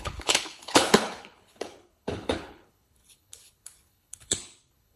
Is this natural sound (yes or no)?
no